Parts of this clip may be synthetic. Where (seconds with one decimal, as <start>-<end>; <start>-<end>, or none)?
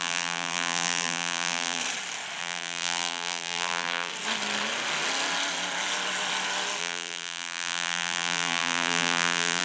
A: 0.0-1.8; 2.4-4.1; 6.8-9.6